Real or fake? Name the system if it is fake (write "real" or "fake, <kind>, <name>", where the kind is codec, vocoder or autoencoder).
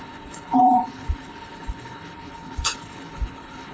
fake, codec, HILCodec